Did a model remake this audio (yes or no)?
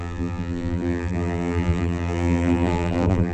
yes